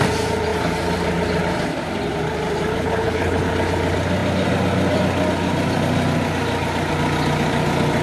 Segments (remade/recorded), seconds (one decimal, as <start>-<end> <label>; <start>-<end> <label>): 0.0-2.7 recorded; 2.7-3.5 remade; 3.5-8.0 recorded